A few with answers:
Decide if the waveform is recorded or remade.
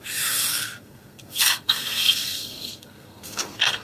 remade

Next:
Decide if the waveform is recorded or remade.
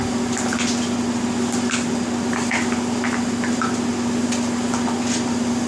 recorded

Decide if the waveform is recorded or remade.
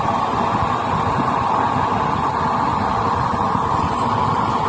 recorded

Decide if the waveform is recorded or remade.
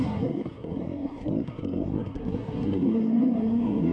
remade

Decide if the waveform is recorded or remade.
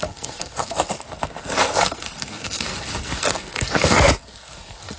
remade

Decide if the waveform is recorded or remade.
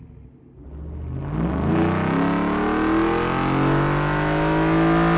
recorded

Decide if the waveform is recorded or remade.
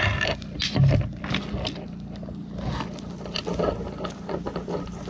recorded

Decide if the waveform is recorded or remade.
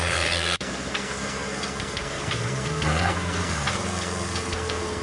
remade